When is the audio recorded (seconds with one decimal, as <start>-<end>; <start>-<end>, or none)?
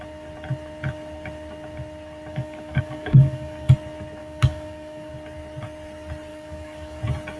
0.0-2.3; 3.7-4.2; 5.1-6.3; 7.0-7.4